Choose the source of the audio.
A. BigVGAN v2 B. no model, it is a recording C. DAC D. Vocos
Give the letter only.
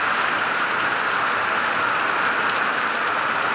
B